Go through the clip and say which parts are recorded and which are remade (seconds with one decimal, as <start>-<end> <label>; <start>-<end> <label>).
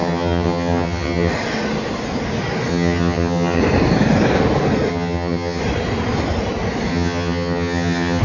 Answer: 0.0-1.3 remade; 1.3-2.7 recorded; 2.7-3.6 remade; 3.6-4.9 recorded; 4.9-5.6 remade; 5.6-6.9 recorded; 6.9-8.2 remade